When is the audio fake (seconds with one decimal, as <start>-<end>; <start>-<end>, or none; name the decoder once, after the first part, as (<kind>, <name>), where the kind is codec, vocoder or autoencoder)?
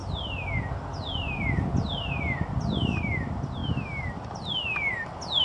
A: none